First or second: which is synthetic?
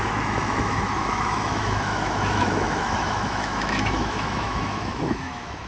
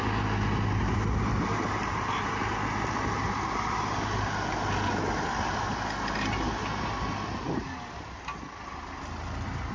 first